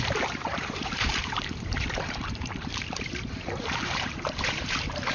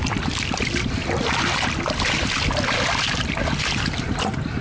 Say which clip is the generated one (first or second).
first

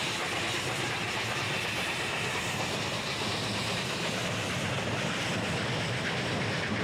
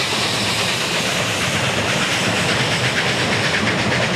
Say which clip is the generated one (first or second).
second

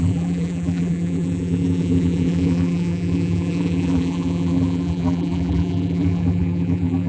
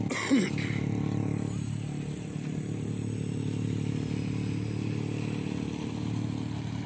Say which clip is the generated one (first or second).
first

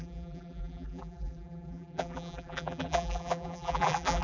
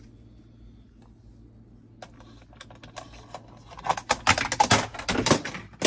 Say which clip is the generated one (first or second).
first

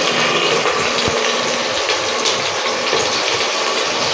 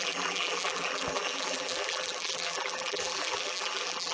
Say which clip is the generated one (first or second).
second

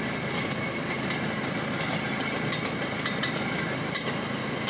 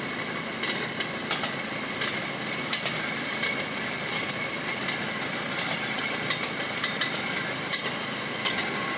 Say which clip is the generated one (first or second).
second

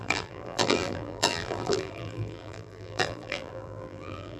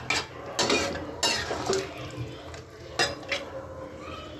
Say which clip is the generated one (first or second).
first